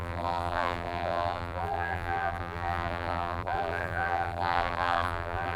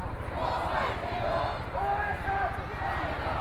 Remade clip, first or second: first